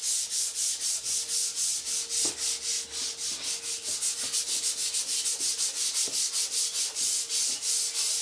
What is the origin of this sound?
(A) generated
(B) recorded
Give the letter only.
B